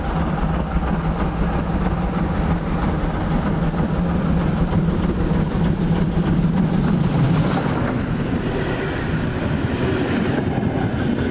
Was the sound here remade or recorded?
recorded